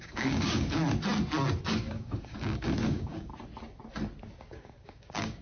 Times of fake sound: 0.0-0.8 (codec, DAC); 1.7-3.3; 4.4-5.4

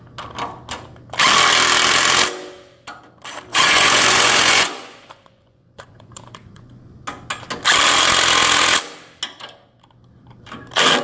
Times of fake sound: 3.5-6.8 (vocoder, Vocos)

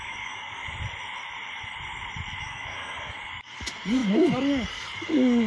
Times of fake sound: 0.0-0.6 (codec, DAC); 2.4-5.5

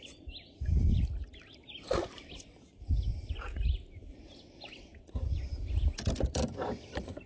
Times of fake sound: none

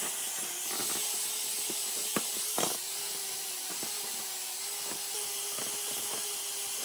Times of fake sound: 1.8-4.3 (vocoder, BigVGAN v2)

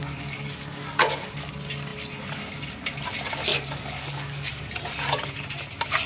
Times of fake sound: 0.0-1.5 (codec, DAC); 3.5-4.5

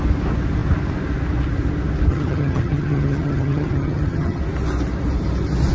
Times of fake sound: 2.1-4.4 (vocoder, HiFi-GAN)